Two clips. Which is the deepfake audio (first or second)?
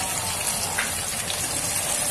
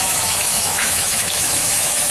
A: second